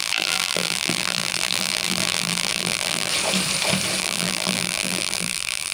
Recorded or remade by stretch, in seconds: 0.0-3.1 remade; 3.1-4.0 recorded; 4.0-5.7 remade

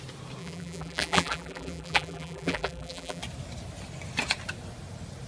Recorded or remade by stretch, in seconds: 0.0-0.4 recorded; 0.4-3.2 remade; 3.2-5.3 recorded

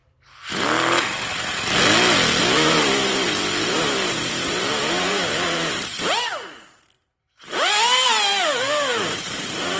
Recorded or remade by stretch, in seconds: 0.0-2.4 recorded; 2.4-9.8 remade

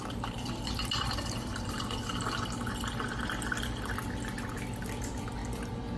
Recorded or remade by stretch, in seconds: 0.0-1.5 remade; 1.5-5.0 recorded; 5.0-5.4 remade; 5.4-6.0 recorded